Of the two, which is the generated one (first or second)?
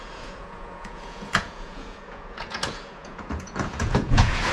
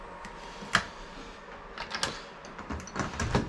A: first